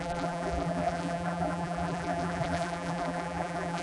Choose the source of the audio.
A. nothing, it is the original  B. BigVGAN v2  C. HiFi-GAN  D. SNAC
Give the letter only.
B